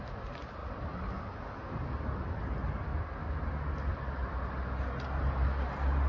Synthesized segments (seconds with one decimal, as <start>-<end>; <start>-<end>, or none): none